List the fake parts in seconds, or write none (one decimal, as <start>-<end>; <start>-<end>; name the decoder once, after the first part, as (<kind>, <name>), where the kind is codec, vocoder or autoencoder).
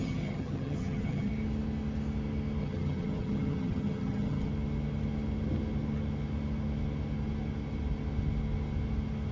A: 0.0-1.3 (vocoder, HiFi-GAN); 2.6-4.5